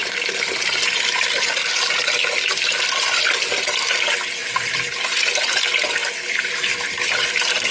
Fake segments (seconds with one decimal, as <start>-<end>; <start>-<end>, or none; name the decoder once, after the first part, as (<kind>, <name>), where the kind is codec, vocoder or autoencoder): none